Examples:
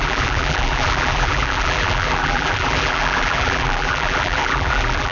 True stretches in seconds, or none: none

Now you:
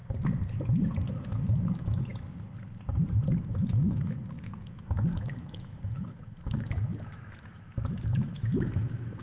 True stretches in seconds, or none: 0.0-1.1; 2.1-3.4